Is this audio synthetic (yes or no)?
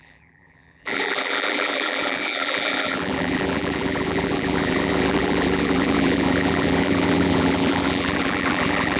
yes